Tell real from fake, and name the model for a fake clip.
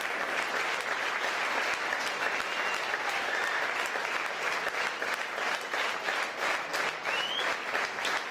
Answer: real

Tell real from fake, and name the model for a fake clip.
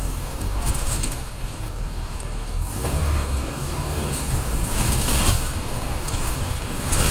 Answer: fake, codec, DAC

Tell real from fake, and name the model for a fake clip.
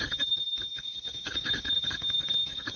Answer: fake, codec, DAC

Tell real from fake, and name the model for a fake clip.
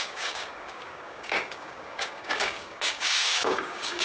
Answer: fake, codec, DAC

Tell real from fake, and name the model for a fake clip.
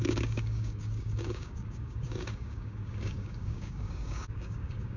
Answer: fake, codec, DAC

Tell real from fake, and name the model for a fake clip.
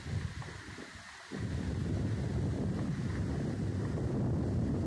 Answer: real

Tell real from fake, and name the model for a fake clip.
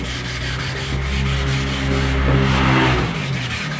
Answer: real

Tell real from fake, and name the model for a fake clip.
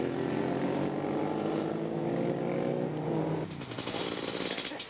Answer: real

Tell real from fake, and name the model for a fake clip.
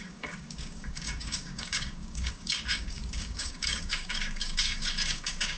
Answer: fake, codec, DAC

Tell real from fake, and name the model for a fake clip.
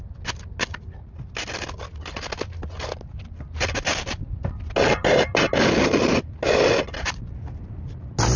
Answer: real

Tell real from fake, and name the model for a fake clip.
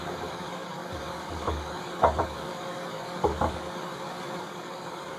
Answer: fake, codec, DAC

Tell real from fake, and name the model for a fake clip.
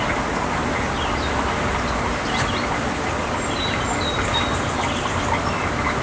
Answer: real